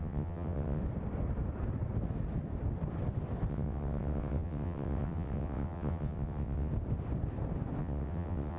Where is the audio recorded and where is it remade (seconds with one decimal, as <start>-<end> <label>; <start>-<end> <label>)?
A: 0.0-0.8 remade; 0.8-3.5 recorded; 3.5-6.7 remade; 6.7-7.8 recorded; 7.8-8.6 remade